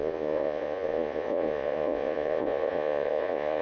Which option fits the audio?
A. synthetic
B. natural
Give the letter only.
A